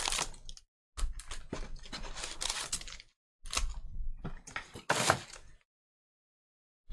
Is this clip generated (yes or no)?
no